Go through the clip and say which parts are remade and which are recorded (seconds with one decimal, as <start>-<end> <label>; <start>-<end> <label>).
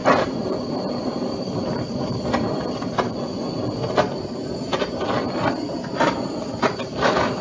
0.0-4.7 remade; 4.7-5.8 recorded; 5.8-7.4 remade